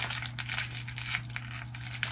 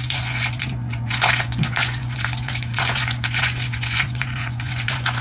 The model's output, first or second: second